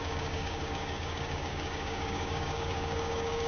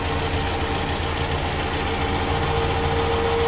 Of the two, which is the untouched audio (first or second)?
second